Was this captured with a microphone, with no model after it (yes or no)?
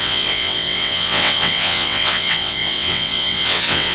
no